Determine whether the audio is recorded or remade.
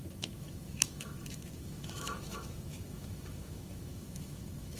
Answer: remade